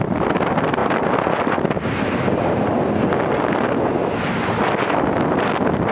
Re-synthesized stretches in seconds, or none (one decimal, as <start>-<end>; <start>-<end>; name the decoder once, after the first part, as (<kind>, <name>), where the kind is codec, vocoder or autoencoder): none